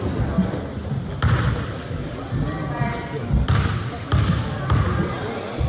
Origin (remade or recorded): recorded